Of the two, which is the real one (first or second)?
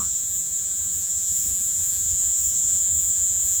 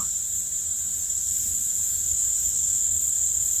second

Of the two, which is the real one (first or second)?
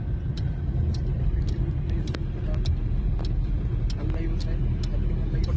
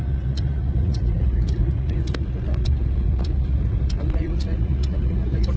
first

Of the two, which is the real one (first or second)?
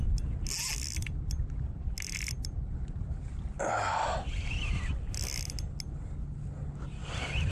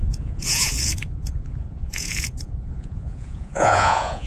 first